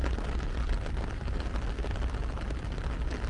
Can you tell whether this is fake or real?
real